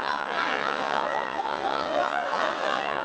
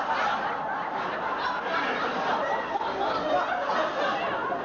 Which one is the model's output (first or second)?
first